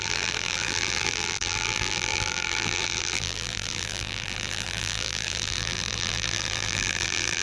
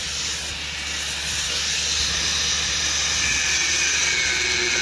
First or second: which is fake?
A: first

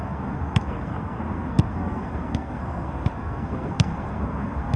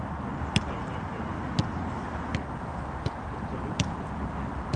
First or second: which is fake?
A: first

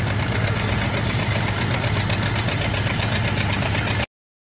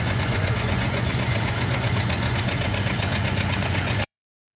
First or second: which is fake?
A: second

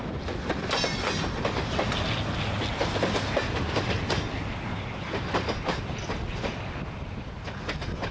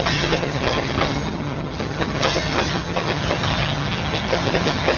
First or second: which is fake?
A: second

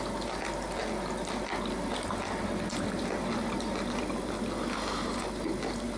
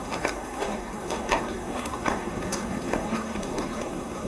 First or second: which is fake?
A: second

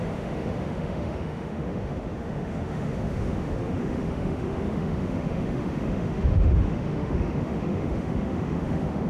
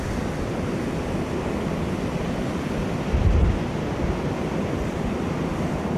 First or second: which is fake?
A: first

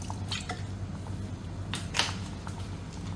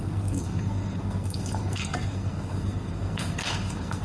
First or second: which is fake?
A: second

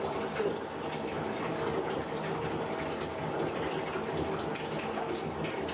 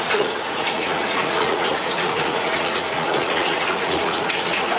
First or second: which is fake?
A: second